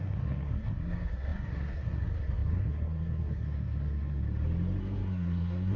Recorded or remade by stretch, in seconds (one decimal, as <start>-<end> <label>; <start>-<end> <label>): 0.0-4.2 remade; 4.2-4.8 recorded; 4.8-5.8 remade